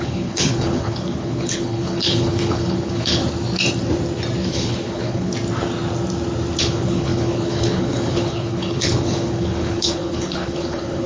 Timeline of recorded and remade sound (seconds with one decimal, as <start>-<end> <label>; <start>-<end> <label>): 0.0-3.2 remade; 3.2-4.5 recorded; 4.5-5.3 remade; 5.3-6.6 recorded; 6.6-11.1 remade